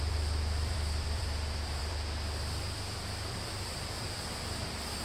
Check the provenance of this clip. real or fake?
fake